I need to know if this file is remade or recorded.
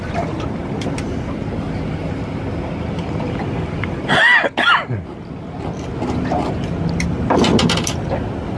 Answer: recorded